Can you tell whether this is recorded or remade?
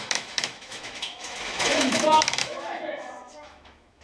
remade